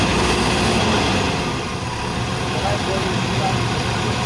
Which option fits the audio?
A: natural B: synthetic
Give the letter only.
A